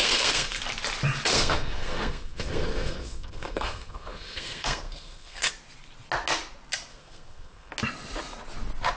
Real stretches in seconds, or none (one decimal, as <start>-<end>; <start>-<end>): 0.6-1.3; 5.5-6.9; 7.7-9.0